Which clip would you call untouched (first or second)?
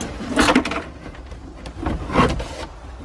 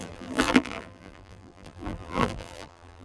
first